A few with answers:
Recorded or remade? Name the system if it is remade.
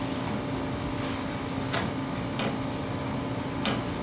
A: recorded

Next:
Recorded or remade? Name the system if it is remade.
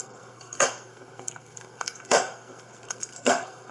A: remade, codec, SNAC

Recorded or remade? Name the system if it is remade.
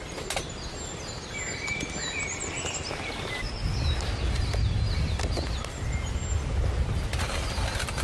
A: recorded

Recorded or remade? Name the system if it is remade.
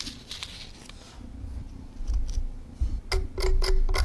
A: recorded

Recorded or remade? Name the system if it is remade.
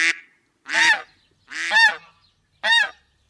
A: recorded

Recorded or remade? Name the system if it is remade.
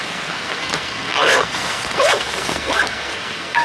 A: remade, codec, SNAC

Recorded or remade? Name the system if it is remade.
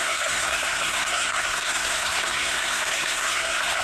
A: remade, codec, SNAC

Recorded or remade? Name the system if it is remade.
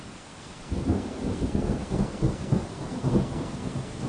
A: remade, codec, SNAC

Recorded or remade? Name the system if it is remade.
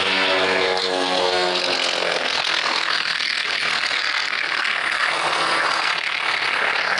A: remade, codec, SNAC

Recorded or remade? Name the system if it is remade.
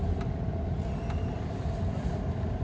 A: recorded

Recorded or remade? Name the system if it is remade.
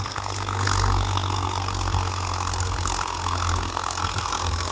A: remade, codec, SNAC